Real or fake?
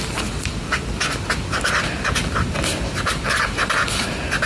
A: real